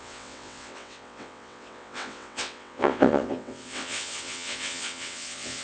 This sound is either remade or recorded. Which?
remade